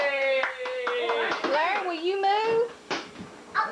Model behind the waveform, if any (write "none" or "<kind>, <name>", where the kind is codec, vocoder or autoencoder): none